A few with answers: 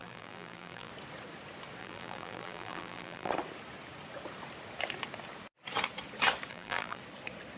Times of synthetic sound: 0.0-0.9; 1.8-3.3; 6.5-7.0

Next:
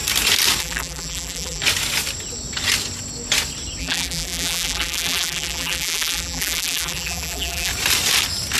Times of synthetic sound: 0.6-1.6; 3.8-7.7

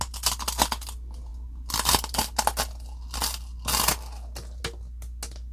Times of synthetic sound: none

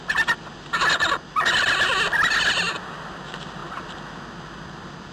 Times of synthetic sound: none

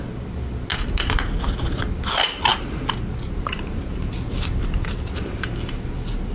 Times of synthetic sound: 0.7-1.8; 2.5-6.3

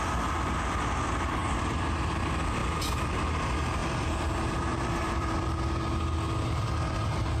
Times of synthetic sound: 1.4-2.2; 3.8-5.3

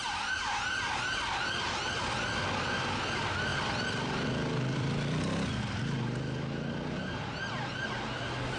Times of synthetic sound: 3.5-5.6